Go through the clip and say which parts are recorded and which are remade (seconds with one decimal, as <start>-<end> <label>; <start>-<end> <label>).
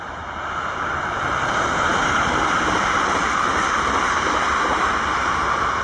0.0-5.8 remade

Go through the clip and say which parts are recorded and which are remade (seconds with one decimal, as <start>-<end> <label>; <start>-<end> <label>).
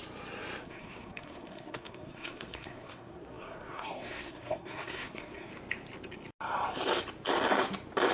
0.0-0.6 recorded; 0.6-5.5 remade; 5.5-8.1 recorded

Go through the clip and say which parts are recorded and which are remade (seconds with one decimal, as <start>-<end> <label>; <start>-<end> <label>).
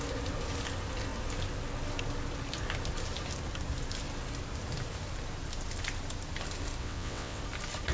0.0-6.8 recorded; 6.8-7.4 remade; 7.4-7.9 recorded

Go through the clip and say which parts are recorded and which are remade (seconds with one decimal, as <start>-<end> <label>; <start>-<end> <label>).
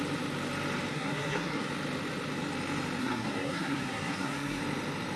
0.0-0.9 recorded; 0.9-1.7 remade; 1.7-3.0 recorded; 3.0-4.6 remade; 4.6-5.2 recorded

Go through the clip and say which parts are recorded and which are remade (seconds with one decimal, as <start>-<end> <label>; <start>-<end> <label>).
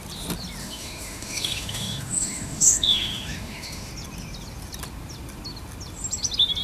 0.0-0.6 recorded; 0.6-3.9 remade; 3.9-6.6 recorded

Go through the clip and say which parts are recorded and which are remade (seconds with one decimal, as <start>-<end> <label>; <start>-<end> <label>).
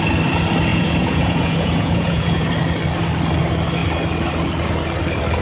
0.0-0.7 recorded; 0.7-2.5 remade; 2.5-5.4 recorded